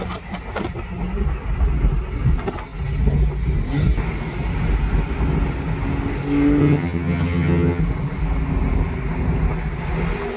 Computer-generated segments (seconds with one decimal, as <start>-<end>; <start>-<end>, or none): 6.6-7.8